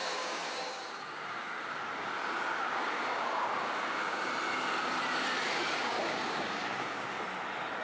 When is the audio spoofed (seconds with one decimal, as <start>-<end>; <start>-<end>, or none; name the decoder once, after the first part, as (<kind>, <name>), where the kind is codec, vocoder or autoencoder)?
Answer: 0.0-4.3 (codec, DAC); 5.8-7.2